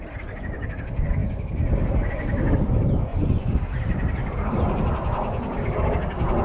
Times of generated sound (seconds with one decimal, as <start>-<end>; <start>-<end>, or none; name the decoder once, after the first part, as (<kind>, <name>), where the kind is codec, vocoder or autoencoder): 3.1-3.6 (vocoder, Vocos)